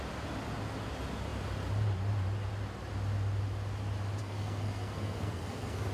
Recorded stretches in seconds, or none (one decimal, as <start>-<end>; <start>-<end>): 0.0-4.2